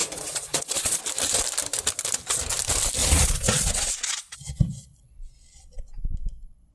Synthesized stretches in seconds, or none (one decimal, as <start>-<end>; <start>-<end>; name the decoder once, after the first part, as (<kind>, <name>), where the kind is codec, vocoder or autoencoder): 0.0-1.0 (vocoder, Vocos); 3.0-6.7

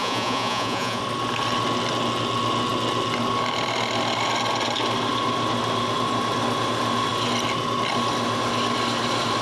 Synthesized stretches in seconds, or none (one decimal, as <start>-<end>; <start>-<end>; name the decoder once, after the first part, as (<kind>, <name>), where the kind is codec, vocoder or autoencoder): 0.0-1.0 (vocoder, Vocos)

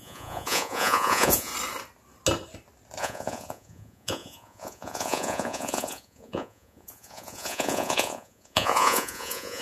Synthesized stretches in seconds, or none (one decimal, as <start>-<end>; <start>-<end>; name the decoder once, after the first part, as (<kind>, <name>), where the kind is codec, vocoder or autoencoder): 0.0-1.5 (vocoder, Vocos); 3.0-9.6

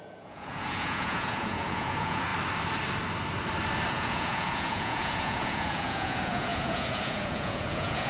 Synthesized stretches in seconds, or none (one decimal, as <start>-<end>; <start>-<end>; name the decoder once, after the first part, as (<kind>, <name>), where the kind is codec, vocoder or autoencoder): 0.0-2.3 (vocoder, Vocos); 3.9-8.1

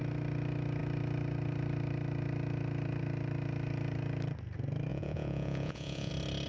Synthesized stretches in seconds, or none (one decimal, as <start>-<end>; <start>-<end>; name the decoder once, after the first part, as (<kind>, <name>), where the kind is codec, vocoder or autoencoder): 4.9-6.1 (vocoder, Vocos)

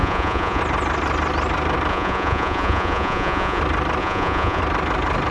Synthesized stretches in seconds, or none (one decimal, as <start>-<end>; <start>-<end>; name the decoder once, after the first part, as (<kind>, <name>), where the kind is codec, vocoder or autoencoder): 0.0-0.6 (vocoder, Vocos); 1.9-3.6; 4.0-4.6

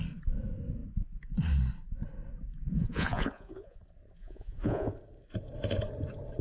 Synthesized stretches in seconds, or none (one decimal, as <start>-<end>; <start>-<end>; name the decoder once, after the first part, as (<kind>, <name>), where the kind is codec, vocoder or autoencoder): 2.7-3.8 (vocoder, Vocos); 4.2-4.9

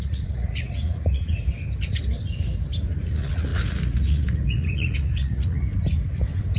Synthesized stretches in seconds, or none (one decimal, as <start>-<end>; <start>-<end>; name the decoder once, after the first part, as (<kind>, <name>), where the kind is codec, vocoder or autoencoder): 0.0-1.3 (vocoder, Vocos); 3.0-5.7